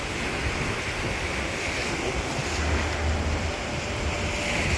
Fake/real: real